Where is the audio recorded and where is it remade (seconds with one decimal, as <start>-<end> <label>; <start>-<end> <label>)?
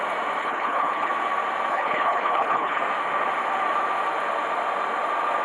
0.0-0.4 recorded; 0.4-1.1 remade; 1.1-1.7 recorded; 1.7-2.8 remade; 2.8-5.4 recorded